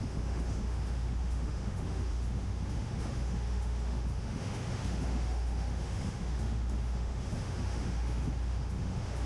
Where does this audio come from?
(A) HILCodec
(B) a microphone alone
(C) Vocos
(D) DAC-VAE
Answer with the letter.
D